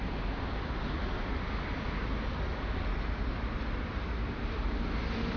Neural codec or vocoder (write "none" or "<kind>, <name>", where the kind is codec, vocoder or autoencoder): none